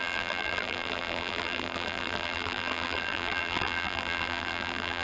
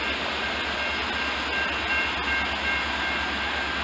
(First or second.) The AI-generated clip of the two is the first